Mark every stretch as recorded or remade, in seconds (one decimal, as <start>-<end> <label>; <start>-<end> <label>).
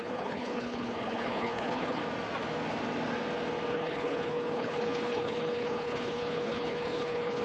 0.0-2.0 remade; 2.0-3.7 recorded; 3.7-7.4 remade